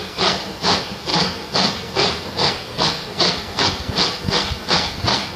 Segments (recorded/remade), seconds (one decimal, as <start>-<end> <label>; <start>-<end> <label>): 0.0-5.4 remade